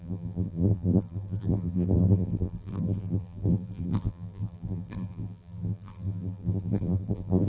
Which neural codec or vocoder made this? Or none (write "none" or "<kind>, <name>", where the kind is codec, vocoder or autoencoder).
vocoder, BigVGAN v2